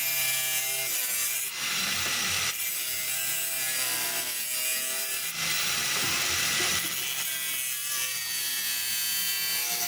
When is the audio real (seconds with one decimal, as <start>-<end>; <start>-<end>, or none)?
0.0-9.9